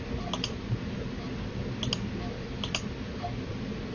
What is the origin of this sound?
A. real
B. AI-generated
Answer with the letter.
A